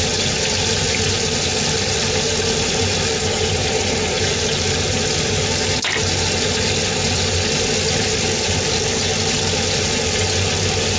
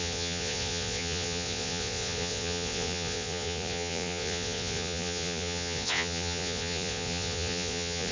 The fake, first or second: second